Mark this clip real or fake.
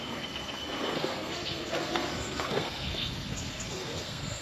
fake